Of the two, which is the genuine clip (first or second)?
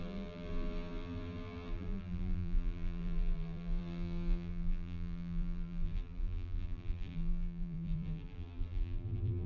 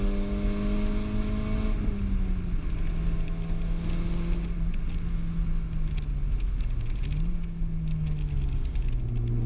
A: second